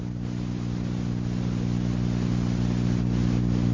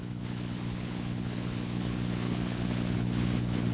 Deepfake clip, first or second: second